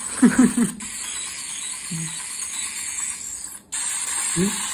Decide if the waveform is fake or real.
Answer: real